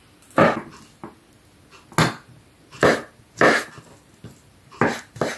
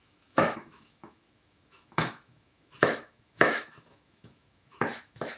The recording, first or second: first